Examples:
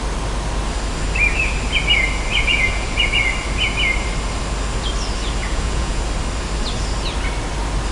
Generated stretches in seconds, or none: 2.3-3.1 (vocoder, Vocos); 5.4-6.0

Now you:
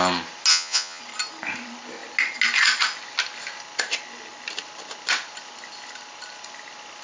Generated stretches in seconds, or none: 0.5-1.0 (vocoder, Vocos)

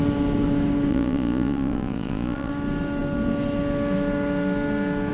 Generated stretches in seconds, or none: 0.9-2.5 (vocoder, Vocos)

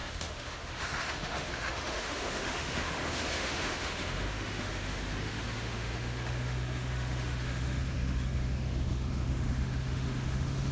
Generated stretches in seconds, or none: 0.0-10.7 (autoencoder, DAC-VAE)

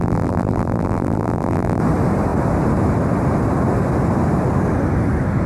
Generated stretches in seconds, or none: 0.0-1.8 (vocoder, BigVGAN v2)